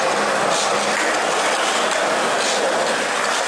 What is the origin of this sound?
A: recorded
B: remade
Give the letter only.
A